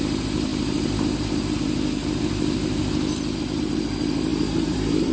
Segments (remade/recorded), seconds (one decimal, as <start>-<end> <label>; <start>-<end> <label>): 0.0-0.5 recorded; 0.5-3.6 remade; 3.6-4.3 recorded; 4.3-5.1 remade